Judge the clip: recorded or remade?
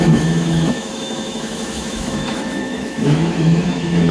remade